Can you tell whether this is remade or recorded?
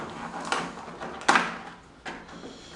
recorded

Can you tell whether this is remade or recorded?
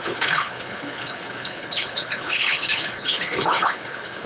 remade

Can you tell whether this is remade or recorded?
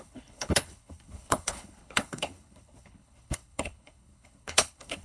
remade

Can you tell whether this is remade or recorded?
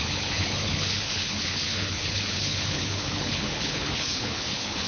remade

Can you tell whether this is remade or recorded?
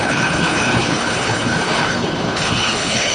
remade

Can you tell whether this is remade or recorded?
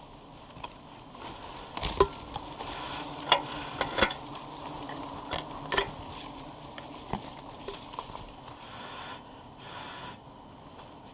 recorded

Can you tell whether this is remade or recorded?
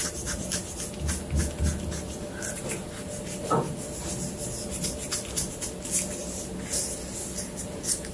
recorded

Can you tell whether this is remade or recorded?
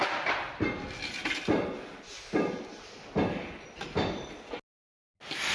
recorded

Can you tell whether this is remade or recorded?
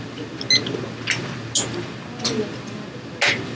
recorded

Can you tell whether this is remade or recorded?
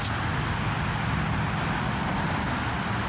recorded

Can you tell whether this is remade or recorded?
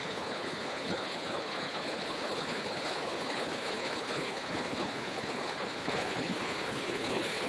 remade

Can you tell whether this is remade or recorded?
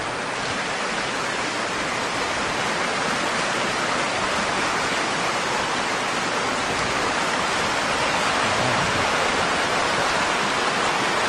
recorded